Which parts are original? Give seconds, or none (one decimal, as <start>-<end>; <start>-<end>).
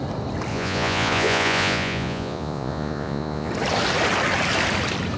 0.0-0.5; 3.5-5.2